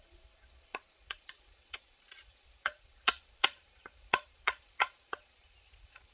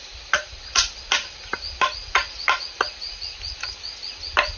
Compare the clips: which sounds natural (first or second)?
second